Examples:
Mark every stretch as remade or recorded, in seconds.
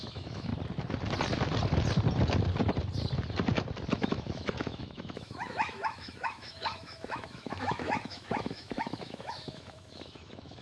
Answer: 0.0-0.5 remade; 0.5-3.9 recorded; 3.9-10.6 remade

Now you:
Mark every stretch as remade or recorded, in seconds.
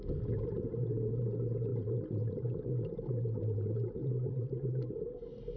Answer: 0.0-1.7 recorded; 1.7-2.6 remade; 2.6-4.0 recorded; 4.0-4.5 remade; 4.5-5.6 recorded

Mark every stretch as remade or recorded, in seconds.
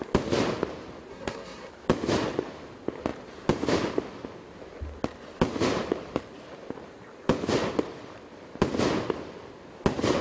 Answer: 0.0-1.1 recorded; 1.1-1.7 remade; 1.7-10.2 recorded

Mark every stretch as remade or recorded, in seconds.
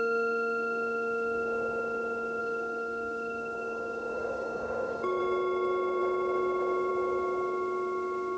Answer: 0.0-2.4 recorded; 2.4-5.2 remade; 5.2-8.4 recorded